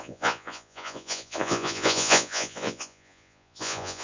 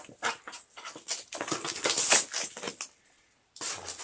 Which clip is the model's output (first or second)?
first